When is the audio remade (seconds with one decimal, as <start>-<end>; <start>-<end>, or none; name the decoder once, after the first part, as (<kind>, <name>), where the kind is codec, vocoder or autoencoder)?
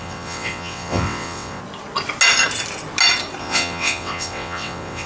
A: 0.0-1.6 (vocoder, WaveNeXt); 3.4-5.1